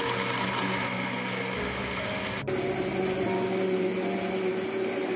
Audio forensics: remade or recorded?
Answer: recorded